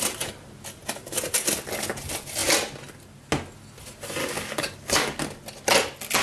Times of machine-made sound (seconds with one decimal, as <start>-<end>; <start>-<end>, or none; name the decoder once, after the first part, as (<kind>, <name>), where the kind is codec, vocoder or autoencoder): 4.2-5.2 (codec, DAC)

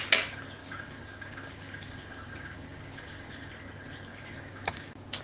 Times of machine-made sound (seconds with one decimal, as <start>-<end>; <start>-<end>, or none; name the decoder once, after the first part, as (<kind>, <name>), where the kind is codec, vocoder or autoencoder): 0.6-3.5 (codec, DAC); 4.1-5.2

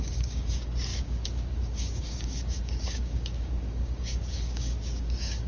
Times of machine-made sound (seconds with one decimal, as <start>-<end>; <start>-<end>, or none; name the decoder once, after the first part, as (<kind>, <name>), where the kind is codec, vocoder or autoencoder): 0.0-5.5 (codec, DAC)

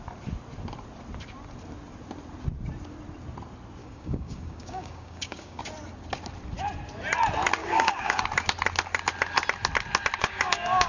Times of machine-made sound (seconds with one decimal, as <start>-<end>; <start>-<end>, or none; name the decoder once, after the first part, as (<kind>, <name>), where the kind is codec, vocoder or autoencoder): 3.8-5.6 (codec, DAC); 7.6-8.2; 10.2-10.9

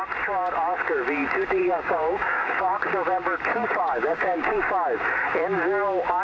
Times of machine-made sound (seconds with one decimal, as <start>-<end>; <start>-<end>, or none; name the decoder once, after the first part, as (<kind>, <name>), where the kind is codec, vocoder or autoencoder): 1.6-2.9 (codec, DAC); 3.5-4.7